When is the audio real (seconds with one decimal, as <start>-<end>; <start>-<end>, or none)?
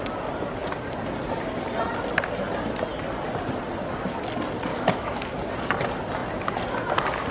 0.0-4.7; 5.3-7.3